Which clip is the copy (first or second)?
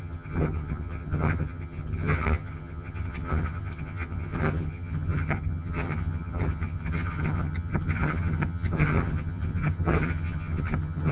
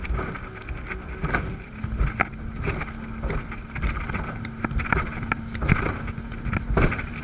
first